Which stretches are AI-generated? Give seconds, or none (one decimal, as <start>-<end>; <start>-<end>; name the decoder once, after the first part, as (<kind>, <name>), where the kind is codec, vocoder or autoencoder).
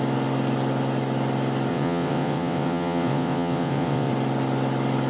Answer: 1.7-4.1 (vocoder, WaveNeXt)